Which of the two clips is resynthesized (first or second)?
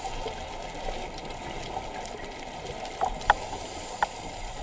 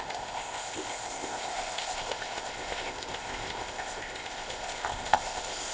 second